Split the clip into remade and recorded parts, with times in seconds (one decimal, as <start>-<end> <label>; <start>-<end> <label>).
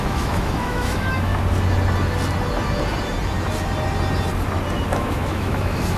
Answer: 0.0-1.3 remade; 1.3-4.9 recorded; 4.9-6.0 remade